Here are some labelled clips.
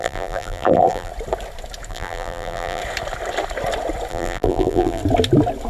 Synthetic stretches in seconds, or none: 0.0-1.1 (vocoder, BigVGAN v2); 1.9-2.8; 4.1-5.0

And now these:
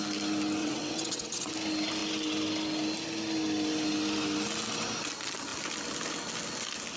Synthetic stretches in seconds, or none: 0.6-1.5 (vocoder, WaveNeXt)

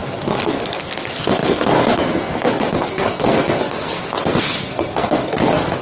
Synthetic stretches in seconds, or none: 0.0-5.8 (codec, SNAC)

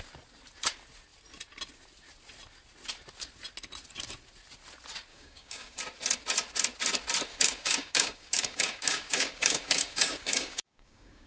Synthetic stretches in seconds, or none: 5.1-5.8 (codec, DAC); 7.3-11.3

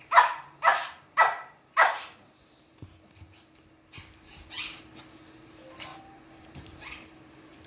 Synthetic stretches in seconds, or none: 0.7-2.7 (vocoder, BigVGAN v2); 4.3-4.8; 5.9-7.7